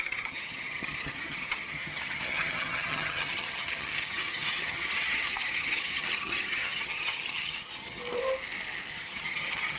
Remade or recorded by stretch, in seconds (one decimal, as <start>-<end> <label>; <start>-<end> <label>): 0.0-8.0 remade; 8.0-8.9 recorded; 8.9-9.8 remade